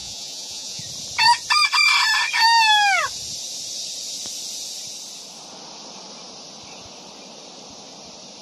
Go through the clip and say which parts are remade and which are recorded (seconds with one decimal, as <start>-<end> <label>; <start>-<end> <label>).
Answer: 0.0-0.8 remade; 0.8-8.4 recorded